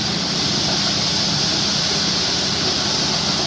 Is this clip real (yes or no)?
yes